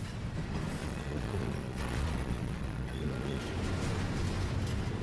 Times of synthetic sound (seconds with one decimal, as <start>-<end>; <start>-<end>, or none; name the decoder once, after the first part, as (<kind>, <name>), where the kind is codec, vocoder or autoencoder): 0.8-3.4 (vocoder, Vocos)